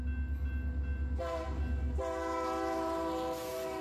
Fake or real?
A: real